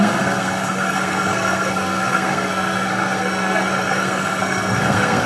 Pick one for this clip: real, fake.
fake